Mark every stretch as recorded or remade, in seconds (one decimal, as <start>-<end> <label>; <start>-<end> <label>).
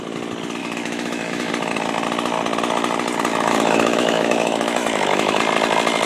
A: 0.0-0.6 recorded; 0.6-1.5 remade; 1.5-3.3 recorded; 3.3-5.4 remade; 5.4-6.1 recorded